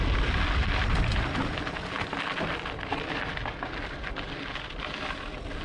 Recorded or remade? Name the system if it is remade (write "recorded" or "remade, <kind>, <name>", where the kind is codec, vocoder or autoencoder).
recorded